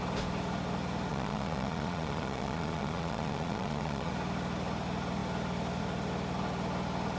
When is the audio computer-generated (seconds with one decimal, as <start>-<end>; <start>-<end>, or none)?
1.1-4.1